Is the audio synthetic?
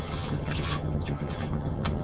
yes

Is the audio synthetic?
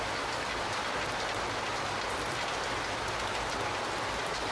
no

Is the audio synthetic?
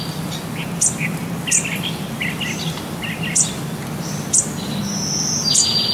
no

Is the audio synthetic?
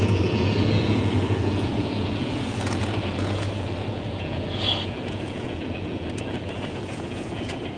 yes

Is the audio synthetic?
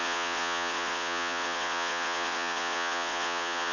yes